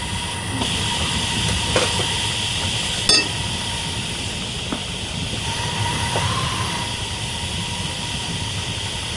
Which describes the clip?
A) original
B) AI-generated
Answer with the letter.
A